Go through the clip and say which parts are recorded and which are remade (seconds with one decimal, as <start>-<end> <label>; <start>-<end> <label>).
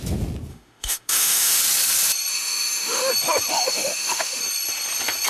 0.0-0.5 recorded; 0.5-1.6 remade; 1.6-2.3 recorded; 2.3-3.1 remade; 3.1-3.5 recorded; 3.5-4.4 remade; 4.4-5.3 recorded